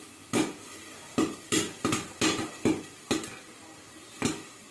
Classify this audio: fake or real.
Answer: real